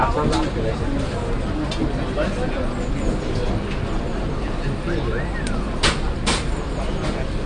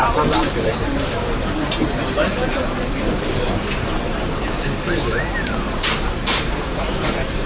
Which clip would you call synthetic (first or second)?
second